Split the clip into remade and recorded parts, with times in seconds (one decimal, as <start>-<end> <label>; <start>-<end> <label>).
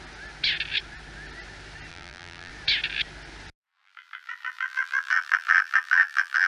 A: 0.0-1.9 recorded; 1.9-2.5 remade; 2.5-3.7 recorded; 3.7-6.5 remade